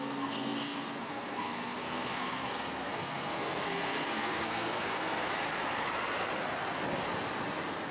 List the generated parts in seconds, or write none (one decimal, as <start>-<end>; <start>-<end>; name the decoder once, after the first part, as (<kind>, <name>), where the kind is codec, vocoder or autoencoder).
0.0-5.3 (codec, SNAC)